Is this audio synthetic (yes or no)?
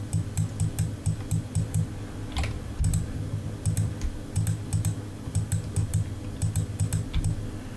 no